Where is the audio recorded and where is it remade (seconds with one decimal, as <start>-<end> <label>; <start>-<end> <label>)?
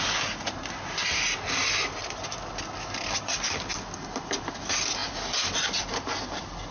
0.0-6.7 recorded